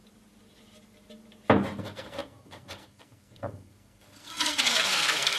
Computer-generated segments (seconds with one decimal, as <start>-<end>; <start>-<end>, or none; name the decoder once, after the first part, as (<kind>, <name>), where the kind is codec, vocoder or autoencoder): 1.8-5.4 (codec, SNAC)